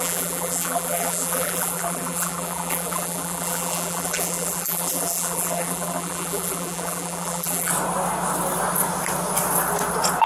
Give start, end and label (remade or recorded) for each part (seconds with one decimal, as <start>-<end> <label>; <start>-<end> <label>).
0.0-7.7 remade; 7.7-10.3 recorded

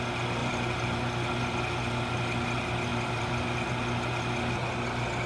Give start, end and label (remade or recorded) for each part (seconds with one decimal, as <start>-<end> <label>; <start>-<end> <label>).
0.0-0.4 recorded; 0.4-1.1 remade; 1.1-2.9 recorded; 2.9-3.7 remade; 3.7-5.3 recorded

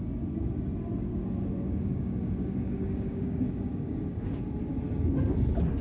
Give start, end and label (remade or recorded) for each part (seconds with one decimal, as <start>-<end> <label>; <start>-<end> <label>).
0.0-1.1 recorded; 1.1-4.4 remade; 4.4-5.8 recorded

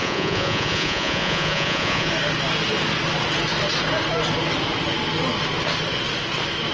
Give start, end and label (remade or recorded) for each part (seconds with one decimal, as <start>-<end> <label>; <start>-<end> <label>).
0.0-2.1 remade; 2.1-6.7 recorded

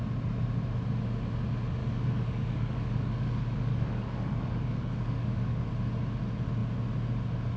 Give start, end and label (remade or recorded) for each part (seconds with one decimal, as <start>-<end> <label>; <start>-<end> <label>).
0.0-1.8 recorded; 1.8-5.7 remade; 5.7-7.6 recorded

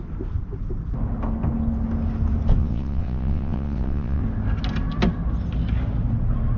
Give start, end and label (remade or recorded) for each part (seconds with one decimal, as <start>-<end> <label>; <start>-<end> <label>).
0.0-2.6 recorded; 2.6-4.2 remade; 4.2-6.6 recorded

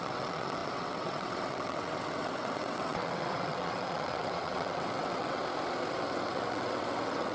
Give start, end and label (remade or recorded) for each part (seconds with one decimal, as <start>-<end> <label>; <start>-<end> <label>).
0.0-5.4 remade; 5.4-5.9 recorded; 5.9-7.3 remade

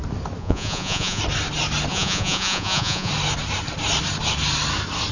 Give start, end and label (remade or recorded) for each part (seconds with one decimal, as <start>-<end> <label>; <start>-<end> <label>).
0.0-0.4 recorded; 0.4-1.2 remade; 1.2-1.9 recorded; 1.9-3.1 remade; 3.1-5.1 recorded